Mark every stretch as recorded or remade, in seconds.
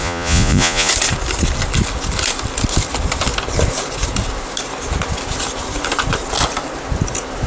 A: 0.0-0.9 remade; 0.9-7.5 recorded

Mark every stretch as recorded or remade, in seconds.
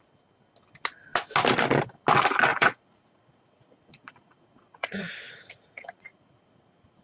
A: 0.0-2.5 recorded; 2.5-7.0 remade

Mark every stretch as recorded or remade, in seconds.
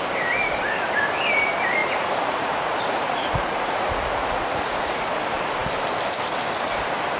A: 0.0-1.8 recorded; 1.8-5.0 remade; 5.0-7.2 recorded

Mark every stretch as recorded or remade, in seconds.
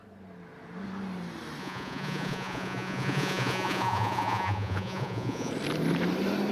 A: 0.0-1.6 recorded; 1.6-5.5 remade; 5.5-6.5 recorded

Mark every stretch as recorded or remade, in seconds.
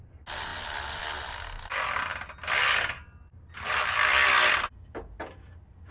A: 0.0-5.9 recorded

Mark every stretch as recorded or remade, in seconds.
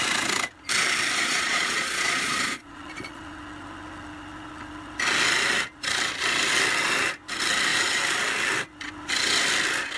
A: 0.0-1.2 recorded; 1.2-3.2 remade; 3.2-10.0 recorded